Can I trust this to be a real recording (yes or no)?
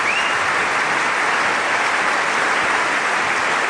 yes